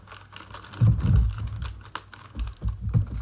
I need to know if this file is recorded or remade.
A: recorded